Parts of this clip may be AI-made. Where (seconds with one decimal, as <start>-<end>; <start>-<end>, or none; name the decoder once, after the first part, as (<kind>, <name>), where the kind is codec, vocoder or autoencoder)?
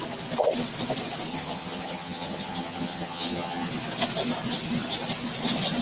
1.3-3.7 (vocoder, HiFi-GAN)